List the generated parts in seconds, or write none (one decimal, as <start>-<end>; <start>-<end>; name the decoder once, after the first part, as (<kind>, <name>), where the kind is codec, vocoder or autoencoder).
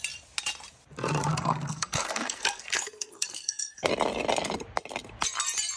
1.3-3.9 (codec, SNAC)